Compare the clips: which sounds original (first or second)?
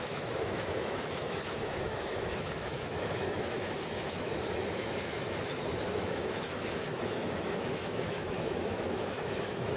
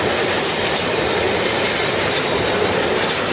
second